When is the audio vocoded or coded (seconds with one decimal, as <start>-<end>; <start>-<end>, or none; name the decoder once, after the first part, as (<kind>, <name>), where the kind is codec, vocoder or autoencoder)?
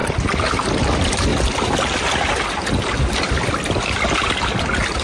none